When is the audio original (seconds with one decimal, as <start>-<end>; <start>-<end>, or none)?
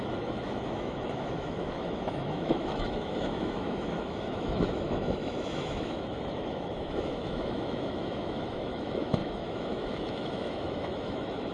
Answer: none